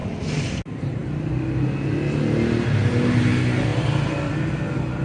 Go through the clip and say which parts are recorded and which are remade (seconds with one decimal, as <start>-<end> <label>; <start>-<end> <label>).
0.0-0.6 remade; 0.6-3.7 recorded; 3.7-4.3 remade; 4.3-5.0 recorded